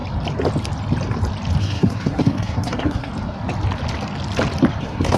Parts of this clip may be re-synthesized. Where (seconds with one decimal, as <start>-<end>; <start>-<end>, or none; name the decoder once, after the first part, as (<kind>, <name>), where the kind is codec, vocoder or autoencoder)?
1.6-3.1 (codec, SNAC); 4.8-5.2